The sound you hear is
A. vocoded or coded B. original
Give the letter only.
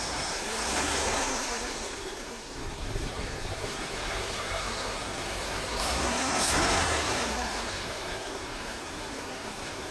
A